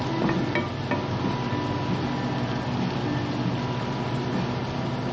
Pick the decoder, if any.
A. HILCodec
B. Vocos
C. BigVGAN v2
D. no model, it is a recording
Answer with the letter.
D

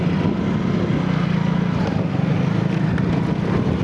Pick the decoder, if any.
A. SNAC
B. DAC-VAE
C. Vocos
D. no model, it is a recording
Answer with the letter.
D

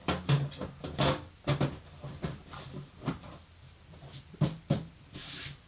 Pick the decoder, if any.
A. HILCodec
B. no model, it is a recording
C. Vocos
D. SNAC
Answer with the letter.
B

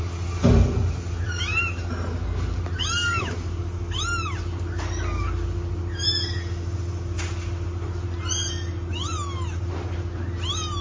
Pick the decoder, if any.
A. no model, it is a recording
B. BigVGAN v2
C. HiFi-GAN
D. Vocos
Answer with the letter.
A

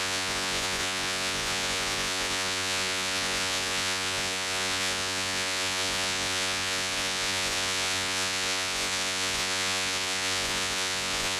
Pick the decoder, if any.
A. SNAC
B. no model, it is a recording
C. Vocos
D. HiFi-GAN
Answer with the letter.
C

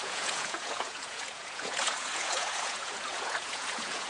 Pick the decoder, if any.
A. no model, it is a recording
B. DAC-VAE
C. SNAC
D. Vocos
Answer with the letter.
D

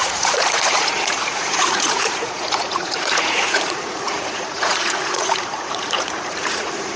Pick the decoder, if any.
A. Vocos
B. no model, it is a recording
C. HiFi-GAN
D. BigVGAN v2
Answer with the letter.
A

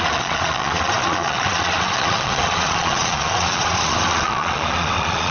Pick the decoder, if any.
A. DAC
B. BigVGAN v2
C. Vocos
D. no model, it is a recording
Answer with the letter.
C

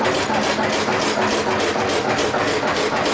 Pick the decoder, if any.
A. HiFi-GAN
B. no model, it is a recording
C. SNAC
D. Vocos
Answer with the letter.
B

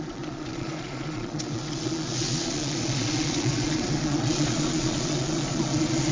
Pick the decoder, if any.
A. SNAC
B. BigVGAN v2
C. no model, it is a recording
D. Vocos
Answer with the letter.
D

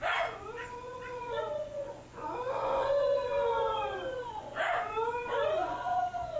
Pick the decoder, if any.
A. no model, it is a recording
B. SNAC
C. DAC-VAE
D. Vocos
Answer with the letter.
D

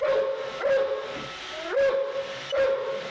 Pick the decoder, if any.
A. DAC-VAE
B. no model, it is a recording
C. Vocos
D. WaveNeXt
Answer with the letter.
B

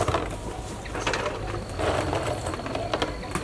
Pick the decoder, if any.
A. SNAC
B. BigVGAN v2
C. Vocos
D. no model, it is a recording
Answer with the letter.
D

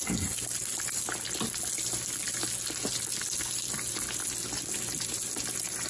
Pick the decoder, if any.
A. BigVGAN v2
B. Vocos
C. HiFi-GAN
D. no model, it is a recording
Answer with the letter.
D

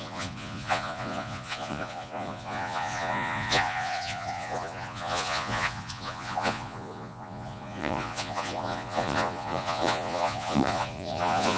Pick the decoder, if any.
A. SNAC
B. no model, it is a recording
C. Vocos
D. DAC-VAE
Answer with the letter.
C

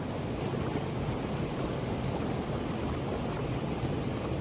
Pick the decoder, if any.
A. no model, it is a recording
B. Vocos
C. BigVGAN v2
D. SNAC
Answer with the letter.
A